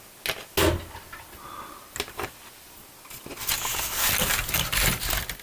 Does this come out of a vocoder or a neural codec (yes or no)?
no